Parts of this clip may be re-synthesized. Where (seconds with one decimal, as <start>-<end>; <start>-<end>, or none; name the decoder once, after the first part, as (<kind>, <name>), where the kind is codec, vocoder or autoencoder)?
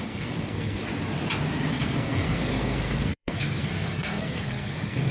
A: 0.0-0.8 (codec, SNAC); 1.7-5.1